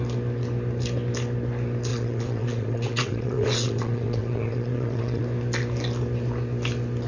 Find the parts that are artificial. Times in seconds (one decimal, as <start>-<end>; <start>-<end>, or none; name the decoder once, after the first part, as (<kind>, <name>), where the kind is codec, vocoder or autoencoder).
1.9-5.2 (vocoder, WaveNeXt)